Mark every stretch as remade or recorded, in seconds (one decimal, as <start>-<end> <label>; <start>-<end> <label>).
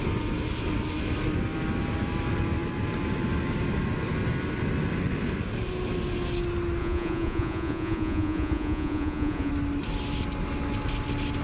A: 0.0-6.8 recorded; 6.8-9.5 remade; 9.5-11.4 recorded